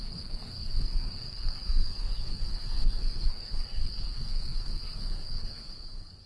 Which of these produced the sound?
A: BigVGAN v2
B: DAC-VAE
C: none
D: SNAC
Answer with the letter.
D